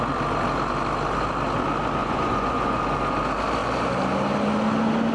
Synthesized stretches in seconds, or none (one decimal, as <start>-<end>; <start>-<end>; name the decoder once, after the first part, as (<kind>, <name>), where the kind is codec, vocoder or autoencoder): 2.0-2.8 (vocoder, Vocos)